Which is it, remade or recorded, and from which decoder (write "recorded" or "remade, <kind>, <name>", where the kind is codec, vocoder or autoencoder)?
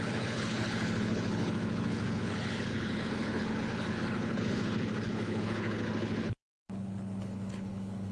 remade, codec, HILCodec